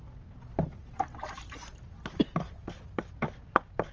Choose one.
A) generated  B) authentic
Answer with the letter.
B